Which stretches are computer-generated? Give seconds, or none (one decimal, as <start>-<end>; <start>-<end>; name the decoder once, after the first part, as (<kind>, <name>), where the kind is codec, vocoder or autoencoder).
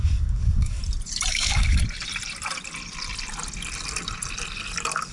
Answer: 0.0-0.8 (codec, DAC); 1.3-1.8